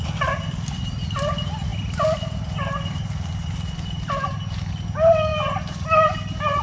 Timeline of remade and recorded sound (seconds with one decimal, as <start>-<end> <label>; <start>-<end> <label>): 0.0-6.6 recorded